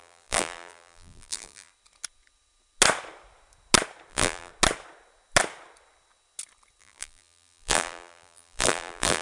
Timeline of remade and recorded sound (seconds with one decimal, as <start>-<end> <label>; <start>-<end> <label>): 0.0-1.7 remade; 1.7-4.1 recorded; 4.1-4.5 remade; 4.5-6.8 recorded; 6.8-9.2 remade